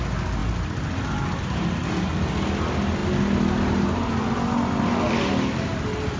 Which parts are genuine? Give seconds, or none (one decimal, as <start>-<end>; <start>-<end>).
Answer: 0.0-6.2